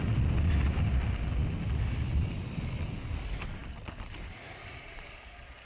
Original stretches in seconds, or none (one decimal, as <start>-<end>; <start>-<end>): 0.0-5.7